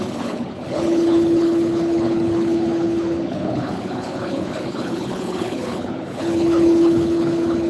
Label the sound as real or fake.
fake